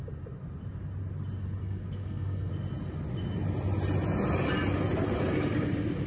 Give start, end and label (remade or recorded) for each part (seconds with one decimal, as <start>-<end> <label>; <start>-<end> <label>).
0.0-1.6 recorded; 1.6-2.5 remade; 2.5-6.1 recorded